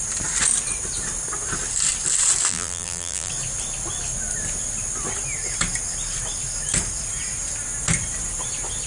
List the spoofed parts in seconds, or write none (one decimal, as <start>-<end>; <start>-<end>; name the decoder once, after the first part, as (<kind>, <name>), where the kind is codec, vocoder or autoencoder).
2.5-3.3 (vocoder, BigVGAN v2)